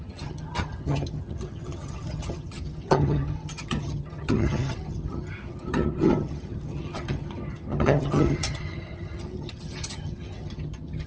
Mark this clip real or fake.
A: fake